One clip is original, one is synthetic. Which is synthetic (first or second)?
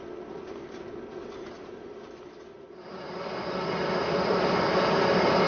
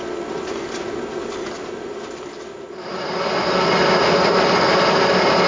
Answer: first